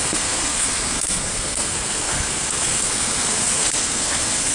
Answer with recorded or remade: remade